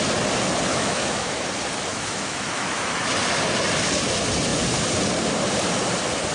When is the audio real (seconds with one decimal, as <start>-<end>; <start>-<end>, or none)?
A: 0.0-0.7; 1.4-1.9; 3.1-6.3